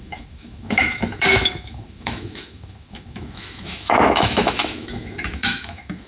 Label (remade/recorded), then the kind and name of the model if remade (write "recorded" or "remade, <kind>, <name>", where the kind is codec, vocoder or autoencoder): remade, autoencoder, DAC-VAE